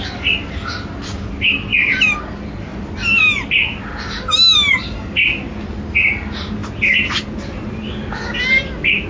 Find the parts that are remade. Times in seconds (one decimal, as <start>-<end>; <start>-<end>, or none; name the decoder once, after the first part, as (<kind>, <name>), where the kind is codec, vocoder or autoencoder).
none